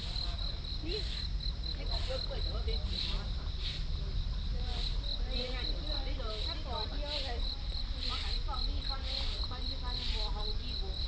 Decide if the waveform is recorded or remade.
recorded